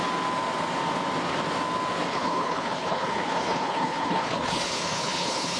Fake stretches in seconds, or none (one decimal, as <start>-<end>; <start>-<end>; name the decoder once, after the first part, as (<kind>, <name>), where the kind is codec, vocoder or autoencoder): 2.1-5.6 (codec, HILCodec)